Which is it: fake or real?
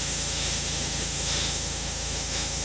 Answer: fake